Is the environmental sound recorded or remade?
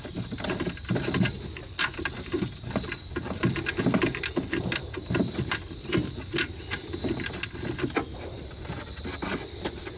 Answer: recorded